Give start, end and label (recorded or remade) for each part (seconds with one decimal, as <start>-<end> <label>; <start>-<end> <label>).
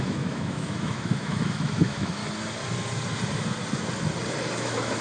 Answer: 0.0-2.2 remade; 2.2-4.6 recorded; 4.6-5.0 remade